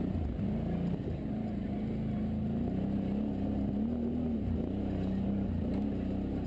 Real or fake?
real